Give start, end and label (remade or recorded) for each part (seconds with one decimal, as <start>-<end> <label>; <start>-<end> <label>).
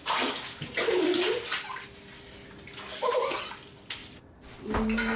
0.0-5.2 recorded